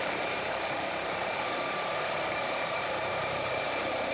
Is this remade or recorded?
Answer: remade